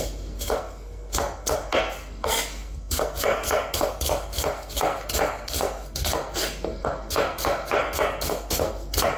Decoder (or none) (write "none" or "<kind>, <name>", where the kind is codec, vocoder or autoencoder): codec, SNAC